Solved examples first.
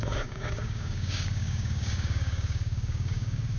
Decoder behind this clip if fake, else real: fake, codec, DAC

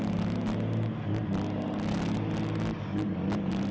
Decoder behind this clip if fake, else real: real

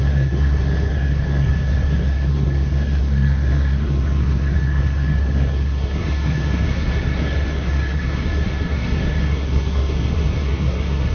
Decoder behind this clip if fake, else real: fake, codec, SNAC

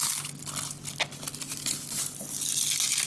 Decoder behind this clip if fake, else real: real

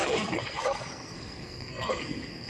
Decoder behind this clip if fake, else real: fake, codec, SNAC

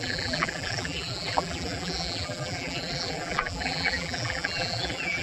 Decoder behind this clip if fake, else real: fake, vocoder, BigVGAN v2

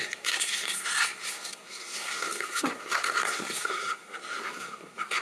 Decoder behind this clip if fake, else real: fake, codec, SNAC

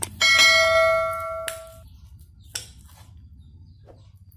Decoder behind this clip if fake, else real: real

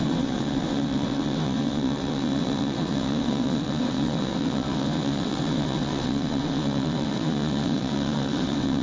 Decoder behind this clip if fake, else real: fake, vocoder, WaveNeXt